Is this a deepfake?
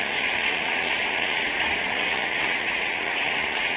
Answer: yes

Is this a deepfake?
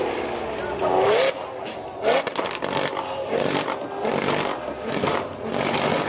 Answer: no